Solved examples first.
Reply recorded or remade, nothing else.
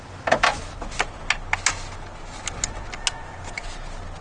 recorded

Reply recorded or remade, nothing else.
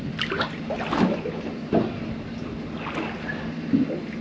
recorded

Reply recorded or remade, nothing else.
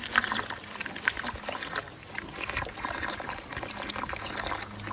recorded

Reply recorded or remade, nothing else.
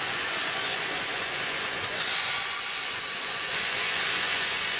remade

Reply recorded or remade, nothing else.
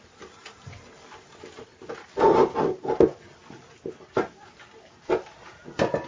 recorded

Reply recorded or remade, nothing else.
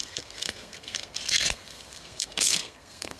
remade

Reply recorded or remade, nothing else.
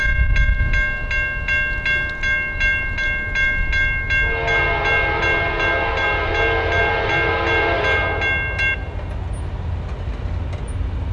recorded